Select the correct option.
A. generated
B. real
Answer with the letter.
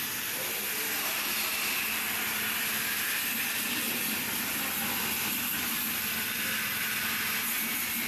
B